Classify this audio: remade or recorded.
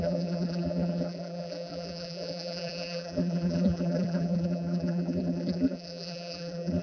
remade